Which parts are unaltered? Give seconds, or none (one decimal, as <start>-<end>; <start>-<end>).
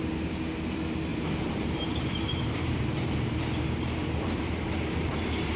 0.0-1.1; 4.5-5.6